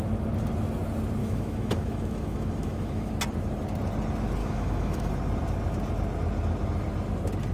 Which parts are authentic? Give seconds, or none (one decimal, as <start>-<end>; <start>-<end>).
0.0-1.2; 3.1-4.4; 5.1-7.5